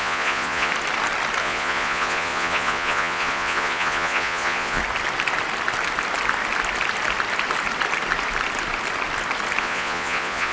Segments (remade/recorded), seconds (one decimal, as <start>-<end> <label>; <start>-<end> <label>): 0.0-0.7 remade; 0.7-1.4 recorded; 1.4-4.8 remade; 4.8-9.6 recorded; 9.6-10.5 remade